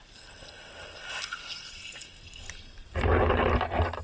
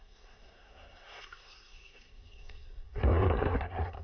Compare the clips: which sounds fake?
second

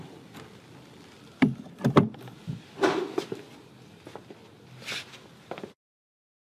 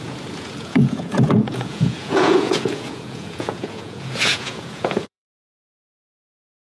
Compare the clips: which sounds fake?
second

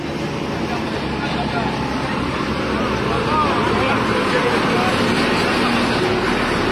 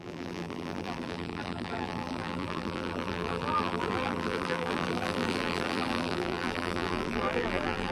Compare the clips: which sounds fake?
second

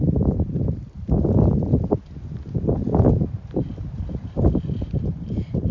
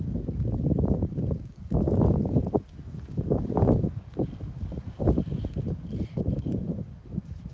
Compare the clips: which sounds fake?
second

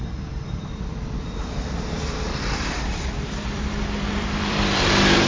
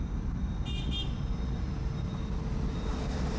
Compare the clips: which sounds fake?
first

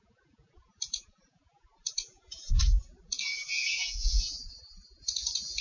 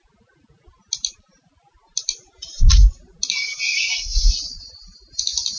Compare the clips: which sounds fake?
first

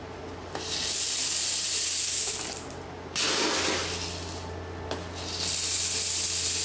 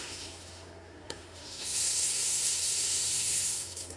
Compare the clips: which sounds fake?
second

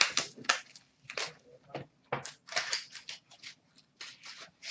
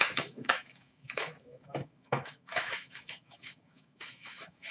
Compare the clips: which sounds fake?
second